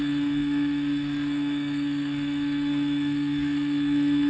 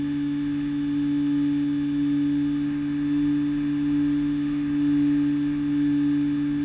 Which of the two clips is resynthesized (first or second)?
first